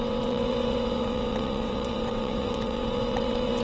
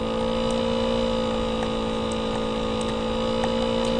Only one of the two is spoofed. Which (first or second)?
first